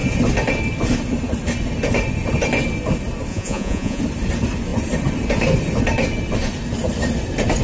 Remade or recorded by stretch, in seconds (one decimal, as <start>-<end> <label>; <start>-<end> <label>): 0.0-3.3 recorded; 3.3-4.0 remade; 4.0-7.6 recorded